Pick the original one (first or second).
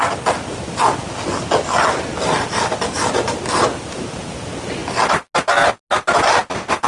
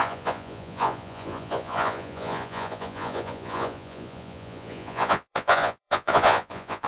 first